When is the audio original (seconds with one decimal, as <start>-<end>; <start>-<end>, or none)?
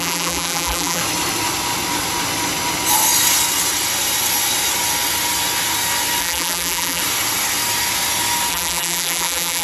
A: 1.0-6.2; 7.0-8.5